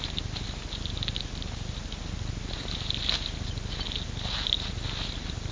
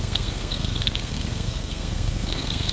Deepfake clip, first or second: second